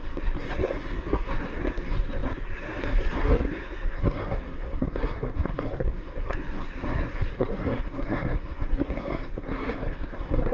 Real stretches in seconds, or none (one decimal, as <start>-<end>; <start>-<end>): none